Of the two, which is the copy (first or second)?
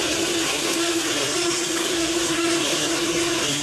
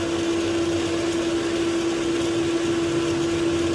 first